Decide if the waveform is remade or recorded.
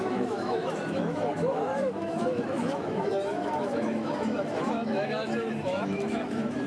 remade